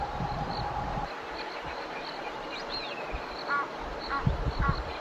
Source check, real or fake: real